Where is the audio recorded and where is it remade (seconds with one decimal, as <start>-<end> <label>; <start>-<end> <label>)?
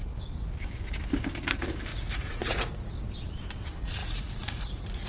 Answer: 0.0-1.9 recorded; 1.9-2.9 remade; 2.9-4.0 recorded; 4.0-5.1 remade